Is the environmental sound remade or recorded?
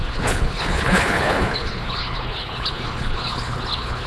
remade